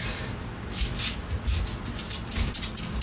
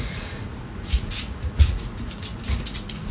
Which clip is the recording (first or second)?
first